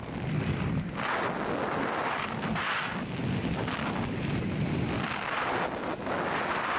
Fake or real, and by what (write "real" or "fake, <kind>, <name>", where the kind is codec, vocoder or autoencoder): real